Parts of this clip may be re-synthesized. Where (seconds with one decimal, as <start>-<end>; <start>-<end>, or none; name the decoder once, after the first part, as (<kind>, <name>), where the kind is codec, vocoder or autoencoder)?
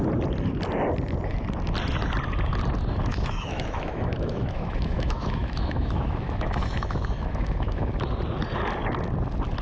3.1-7.9 (autoencoder, DAC-VAE)